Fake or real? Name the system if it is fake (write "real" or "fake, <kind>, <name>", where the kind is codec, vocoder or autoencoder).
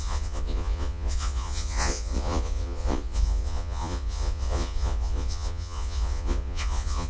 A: fake, vocoder, Vocos